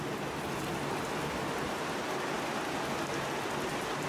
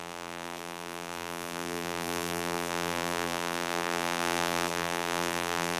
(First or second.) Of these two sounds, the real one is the first